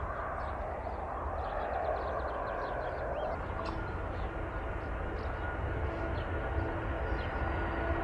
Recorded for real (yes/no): yes